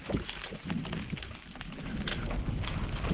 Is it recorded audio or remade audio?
recorded